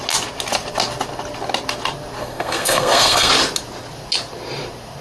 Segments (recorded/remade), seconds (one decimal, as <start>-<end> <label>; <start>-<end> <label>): 0.0-2.2 recorded; 2.2-3.3 remade; 3.3-5.0 recorded